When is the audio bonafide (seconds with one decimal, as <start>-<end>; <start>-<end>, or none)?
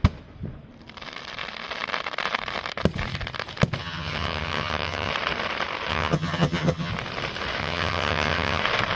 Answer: 0.0-3.8; 5.1-5.9; 6.9-7.6; 8.6-9.0